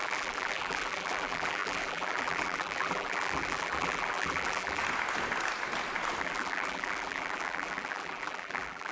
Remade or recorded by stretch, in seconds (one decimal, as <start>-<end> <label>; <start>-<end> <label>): 0.0-4.8 remade; 4.8-6.2 recorded; 6.2-8.9 remade